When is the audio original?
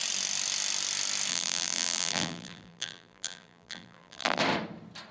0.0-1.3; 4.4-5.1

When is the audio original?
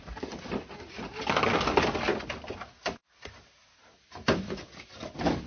0.0-5.5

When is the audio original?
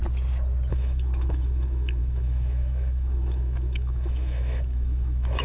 0.0-0.7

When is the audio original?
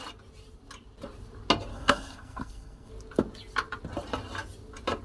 0.0-1.7; 2.9-5.0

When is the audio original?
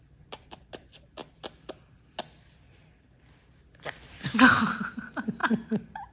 0.0-6.1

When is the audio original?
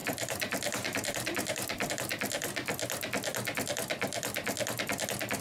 1.9-5.4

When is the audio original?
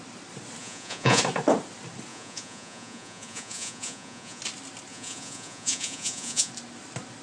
0.0-0.6; 1.2-2.1; 4.4-4.9; 6.5-7.2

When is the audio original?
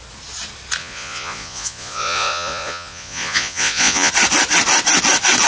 0.0-0.8; 4.1-5.5